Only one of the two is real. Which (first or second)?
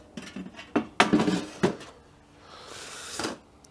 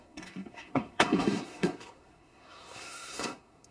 first